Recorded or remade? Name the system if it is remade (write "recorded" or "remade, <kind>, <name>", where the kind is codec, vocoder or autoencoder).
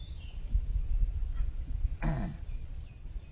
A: recorded